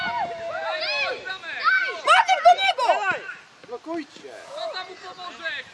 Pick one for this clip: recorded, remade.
recorded